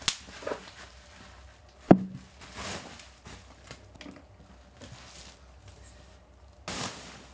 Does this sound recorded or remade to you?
recorded